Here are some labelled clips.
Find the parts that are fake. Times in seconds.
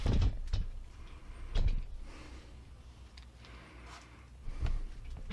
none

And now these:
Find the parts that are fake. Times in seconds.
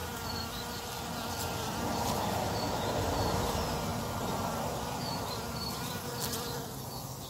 0.0-2.7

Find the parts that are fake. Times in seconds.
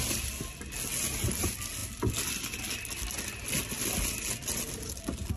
none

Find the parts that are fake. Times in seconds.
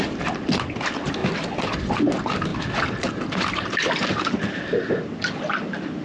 none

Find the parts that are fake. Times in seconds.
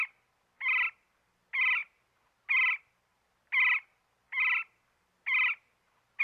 none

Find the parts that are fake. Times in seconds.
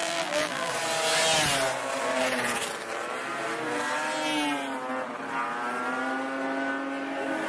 0.0-0.7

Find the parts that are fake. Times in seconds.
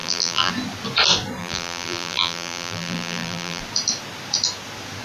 0.0-0.5; 1.4-3.6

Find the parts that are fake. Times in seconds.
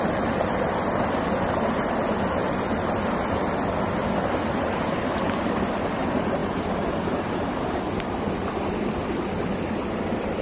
2.4-2.9; 6.4-7.8